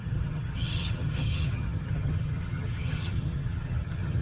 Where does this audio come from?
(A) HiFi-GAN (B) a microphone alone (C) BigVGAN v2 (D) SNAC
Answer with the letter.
A